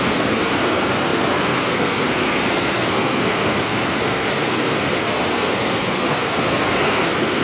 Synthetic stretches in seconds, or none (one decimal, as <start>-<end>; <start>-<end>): 0.0-7.4